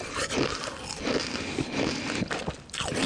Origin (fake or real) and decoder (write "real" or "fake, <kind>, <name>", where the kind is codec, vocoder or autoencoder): real